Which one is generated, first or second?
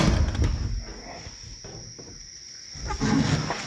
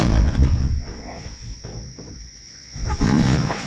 second